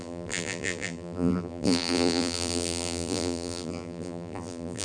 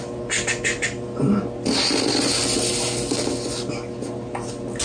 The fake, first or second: first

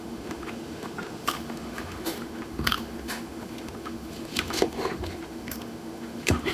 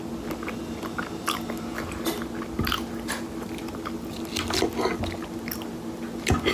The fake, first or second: first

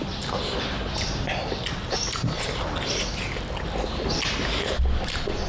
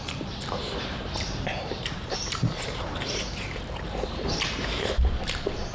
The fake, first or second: second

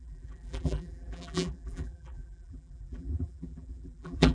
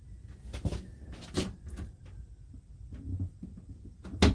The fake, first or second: first